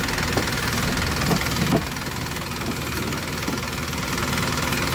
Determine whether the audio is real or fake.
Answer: real